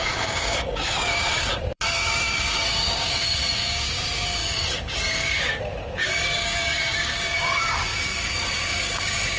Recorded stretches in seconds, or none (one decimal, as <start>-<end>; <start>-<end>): none